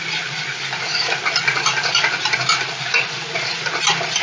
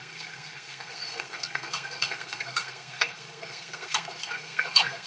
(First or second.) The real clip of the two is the first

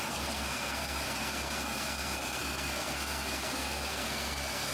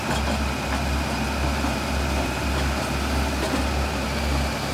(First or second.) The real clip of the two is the second